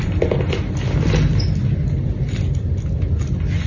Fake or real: real